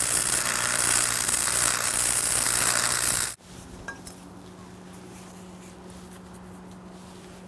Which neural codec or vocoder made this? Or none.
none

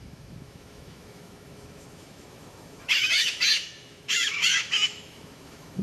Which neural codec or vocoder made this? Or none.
autoencoder, DAC-VAE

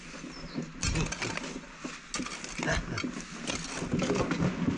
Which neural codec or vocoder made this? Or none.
none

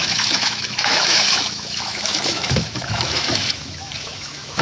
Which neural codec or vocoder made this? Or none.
autoencoder, DAC-VAE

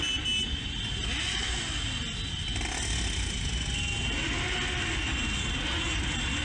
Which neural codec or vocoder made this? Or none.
none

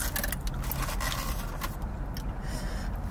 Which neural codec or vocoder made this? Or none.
none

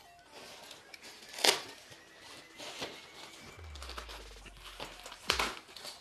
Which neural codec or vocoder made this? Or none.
none